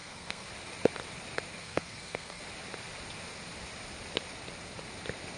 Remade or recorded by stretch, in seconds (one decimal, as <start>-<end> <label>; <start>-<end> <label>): 0.0-0.5 remade; 0.5-1.6 recorded; 1.6-2.4 remade; 2.4-5.4 recorded